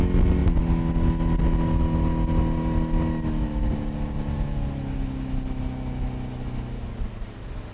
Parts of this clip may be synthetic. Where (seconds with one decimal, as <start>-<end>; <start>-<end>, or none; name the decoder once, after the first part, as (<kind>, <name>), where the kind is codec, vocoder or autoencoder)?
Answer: none